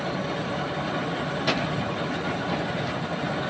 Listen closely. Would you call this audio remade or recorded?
recorded